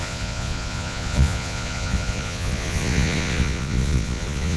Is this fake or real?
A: fake